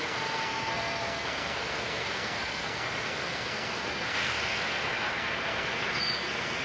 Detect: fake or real fake